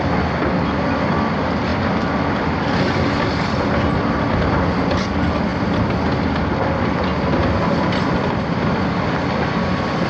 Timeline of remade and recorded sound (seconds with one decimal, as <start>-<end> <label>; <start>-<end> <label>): 0.0-10.1 recorded